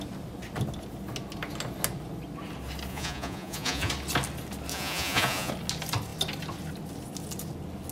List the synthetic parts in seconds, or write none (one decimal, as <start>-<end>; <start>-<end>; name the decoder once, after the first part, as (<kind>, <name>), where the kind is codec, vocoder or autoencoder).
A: 2.9-3.9 (vocoder, Vocos); 4.7-5.5